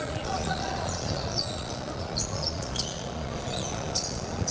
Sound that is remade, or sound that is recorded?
remade